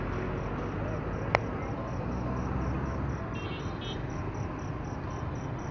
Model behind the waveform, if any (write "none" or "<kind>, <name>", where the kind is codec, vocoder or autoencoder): none